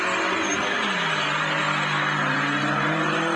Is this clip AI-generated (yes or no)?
no